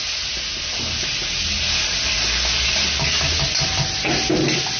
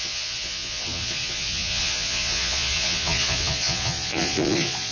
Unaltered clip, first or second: first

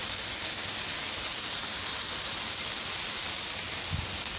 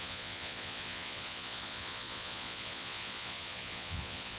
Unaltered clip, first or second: first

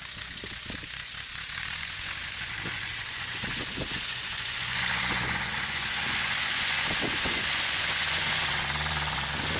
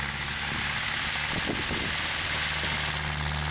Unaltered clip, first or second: second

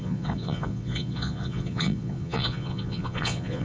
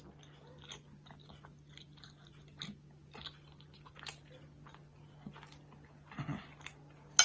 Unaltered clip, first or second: second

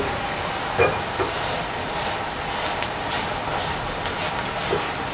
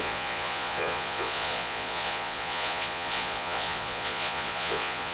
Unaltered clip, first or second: first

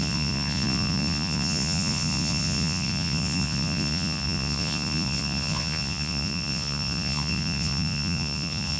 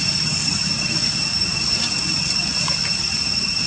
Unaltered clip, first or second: second